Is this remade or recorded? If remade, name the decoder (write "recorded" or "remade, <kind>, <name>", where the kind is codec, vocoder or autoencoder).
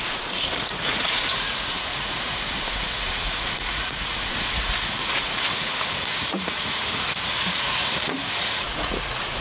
remade, vocoder, Vocos